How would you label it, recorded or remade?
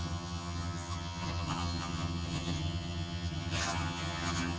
remade